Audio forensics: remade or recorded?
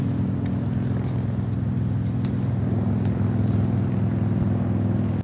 recorded